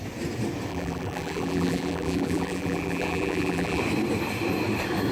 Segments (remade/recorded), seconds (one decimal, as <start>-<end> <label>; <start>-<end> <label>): 0.0-0.7 recorded; 0.7-3.8 remade; 3.8-5.1 recorded